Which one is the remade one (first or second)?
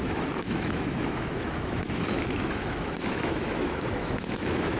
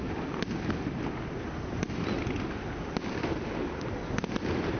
first